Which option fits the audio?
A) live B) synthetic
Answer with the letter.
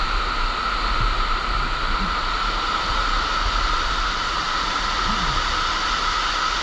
A